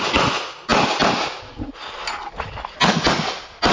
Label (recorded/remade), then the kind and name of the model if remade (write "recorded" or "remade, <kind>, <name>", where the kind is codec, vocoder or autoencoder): recorded